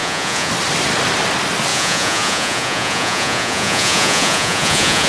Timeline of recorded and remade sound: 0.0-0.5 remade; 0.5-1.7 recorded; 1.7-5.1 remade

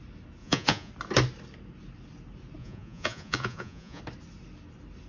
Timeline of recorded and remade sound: 0.0-0.4 recorded; 0.4-0.9 remade; 0.9-2.6 recorded; 2.6-4.0 remade; 4.0-5.1 recorded

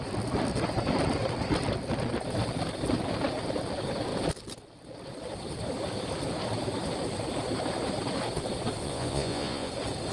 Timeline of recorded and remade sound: 0.0-8.8 recorded; 8.8-9.7 remade; 9.7-10.1 recorded

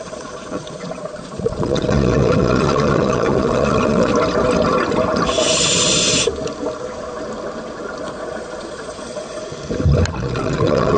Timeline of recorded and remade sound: 0.0-4.1 remade; 4.1-8.0 recorded; 8.0-9.4 remade; 9.4-10.1 recorded; 10.1-11.0 remade

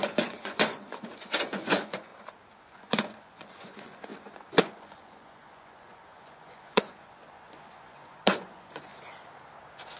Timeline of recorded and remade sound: 0.0-2.1 remade; 2.1-2.6 recorded; 2.6-8.9 remade; 8.9-9.6 recorded; 9.6-10.0 remade

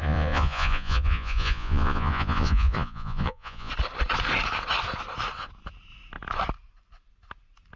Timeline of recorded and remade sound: 0.0-3.7 remade; 3.7-7.8 recorded

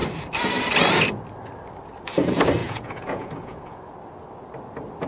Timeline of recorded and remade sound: 0.0-2.6 recorded; 2.6-3.8 remade; 3.8-5.1 recorded